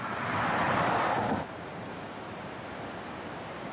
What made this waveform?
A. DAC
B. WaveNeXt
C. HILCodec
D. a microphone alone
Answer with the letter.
D